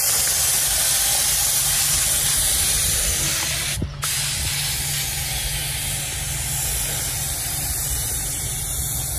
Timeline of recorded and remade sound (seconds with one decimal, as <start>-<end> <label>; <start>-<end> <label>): 0.0-1.1 recorded; 1.1-2.9 remade; 2.9-8.0 recorded; 8.0-8.5 remade; 8.5-9.2 recorded